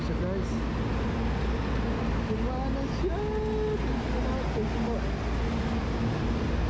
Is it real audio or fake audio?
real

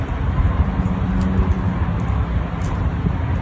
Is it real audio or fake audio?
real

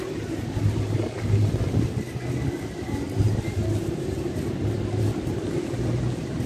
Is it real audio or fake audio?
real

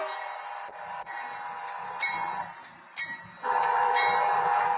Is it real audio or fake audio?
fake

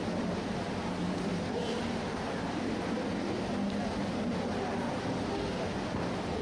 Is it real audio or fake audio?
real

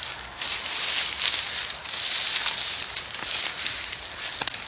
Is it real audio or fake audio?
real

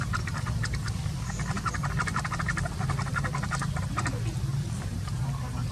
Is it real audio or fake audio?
real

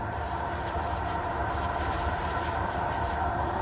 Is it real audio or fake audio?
fake